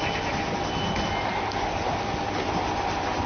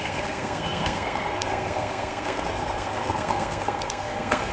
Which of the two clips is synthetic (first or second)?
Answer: second